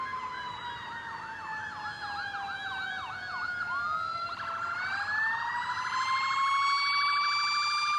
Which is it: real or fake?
real